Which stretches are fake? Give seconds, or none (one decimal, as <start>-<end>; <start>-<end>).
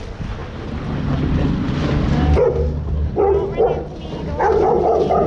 none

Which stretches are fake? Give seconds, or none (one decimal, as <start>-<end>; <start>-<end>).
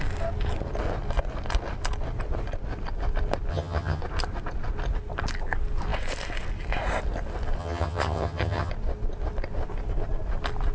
3.5-4.0; 7.6-8.7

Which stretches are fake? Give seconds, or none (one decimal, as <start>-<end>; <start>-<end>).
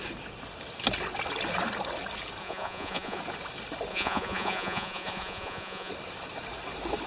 2.4-3.2; 3.9-5.9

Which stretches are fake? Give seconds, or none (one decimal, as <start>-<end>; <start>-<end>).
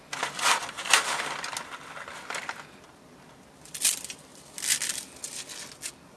none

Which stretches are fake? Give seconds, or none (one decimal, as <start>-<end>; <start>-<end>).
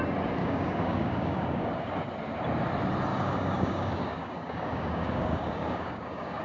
0.4-1.8; 3.1-6.4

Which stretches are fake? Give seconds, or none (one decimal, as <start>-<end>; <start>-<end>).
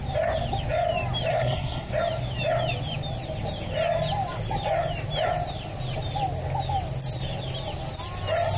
1.3-1.9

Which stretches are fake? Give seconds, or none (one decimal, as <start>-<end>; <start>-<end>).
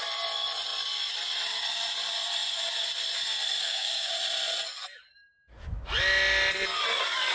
3.6-4.1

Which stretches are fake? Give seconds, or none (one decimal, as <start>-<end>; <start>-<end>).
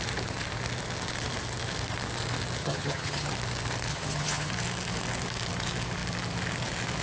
2.6-3.3; 3.9-4.5